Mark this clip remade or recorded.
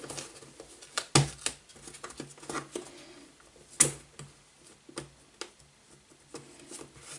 recorded